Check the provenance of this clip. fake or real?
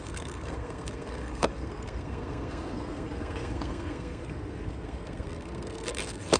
fake